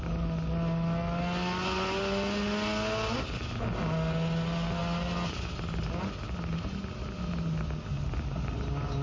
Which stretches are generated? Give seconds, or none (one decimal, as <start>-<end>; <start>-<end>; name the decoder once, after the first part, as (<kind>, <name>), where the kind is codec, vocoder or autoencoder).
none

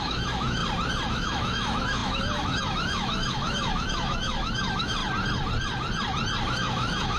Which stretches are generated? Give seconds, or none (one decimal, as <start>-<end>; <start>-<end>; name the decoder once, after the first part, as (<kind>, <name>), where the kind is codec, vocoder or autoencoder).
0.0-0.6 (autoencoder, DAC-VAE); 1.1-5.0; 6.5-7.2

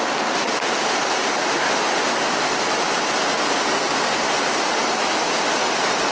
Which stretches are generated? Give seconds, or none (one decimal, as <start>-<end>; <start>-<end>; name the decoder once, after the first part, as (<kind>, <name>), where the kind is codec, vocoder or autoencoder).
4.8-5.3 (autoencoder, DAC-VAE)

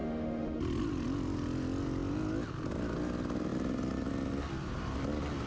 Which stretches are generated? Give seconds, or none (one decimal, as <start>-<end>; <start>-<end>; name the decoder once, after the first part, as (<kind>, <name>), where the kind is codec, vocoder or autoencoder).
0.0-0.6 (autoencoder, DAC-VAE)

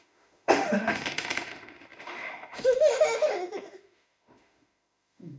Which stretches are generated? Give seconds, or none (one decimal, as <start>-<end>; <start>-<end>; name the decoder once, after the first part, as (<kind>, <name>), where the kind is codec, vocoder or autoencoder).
0.0-5.4 (autoencoder, DAC-VAE)